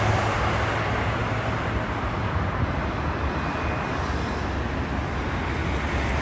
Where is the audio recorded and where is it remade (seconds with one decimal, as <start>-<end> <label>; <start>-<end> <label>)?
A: 0.0-6.2 recorded

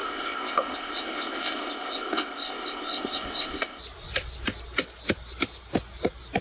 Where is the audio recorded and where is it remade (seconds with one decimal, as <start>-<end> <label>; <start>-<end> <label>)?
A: 0.0-3.8 remade; 3.8-6.4 recorded

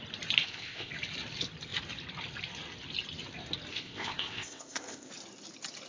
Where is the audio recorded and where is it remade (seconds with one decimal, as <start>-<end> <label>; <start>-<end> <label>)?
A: 0.0-0.4 recorded; 0.4-0.9 remade; 0.9-3.7 recorded; 3.7-5.1 remade; 5.1-5.9 recorded

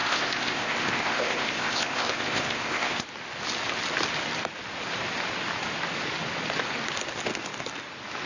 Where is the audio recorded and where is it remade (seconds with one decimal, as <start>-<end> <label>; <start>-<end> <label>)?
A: 0.0-3.0 remade; 3.0-8.3 recorded

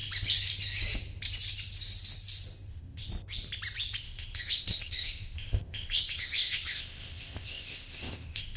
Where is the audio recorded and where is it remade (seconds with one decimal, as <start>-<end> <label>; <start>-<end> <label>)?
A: 0.0-2.7 recorded; 2.7-3.1 remade; 3.1-4.0 recorded; 4.0-8.6 remade

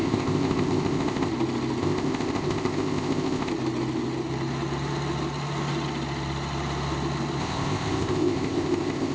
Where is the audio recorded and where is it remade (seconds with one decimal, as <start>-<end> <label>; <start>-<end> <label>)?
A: 0.0-1.3 remade; 1.3-1.8 recorded; 1.8-3.5 remade; 3.5-7.4 recorded; 7.4-9.1 remade

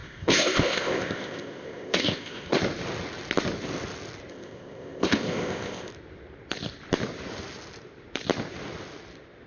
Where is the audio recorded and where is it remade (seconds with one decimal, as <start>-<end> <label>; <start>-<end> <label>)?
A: 0.0-2.6 remade; 2.6-4.3 recorded; 4.3-5.9 remade; 5.9-9.5 recorded